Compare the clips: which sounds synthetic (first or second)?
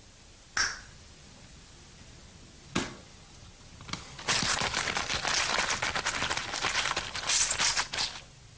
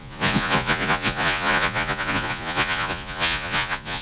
second